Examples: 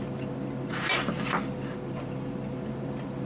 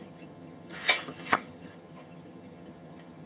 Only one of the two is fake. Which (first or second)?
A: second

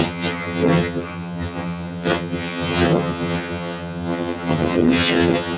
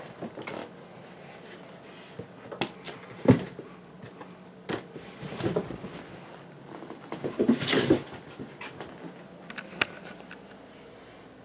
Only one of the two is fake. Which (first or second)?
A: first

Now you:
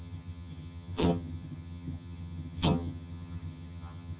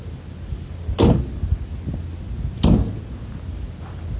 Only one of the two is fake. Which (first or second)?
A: first